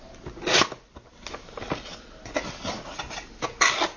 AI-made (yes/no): no